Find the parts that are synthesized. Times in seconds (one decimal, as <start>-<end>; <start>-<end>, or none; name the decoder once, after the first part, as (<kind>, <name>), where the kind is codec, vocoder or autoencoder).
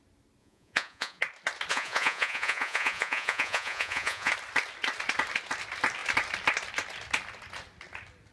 0.4-1.2 (vocoder, Vocos); 1.7-4.3